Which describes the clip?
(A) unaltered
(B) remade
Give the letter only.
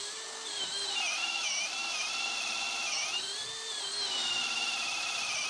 A